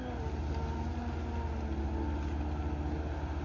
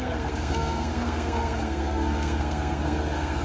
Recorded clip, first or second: first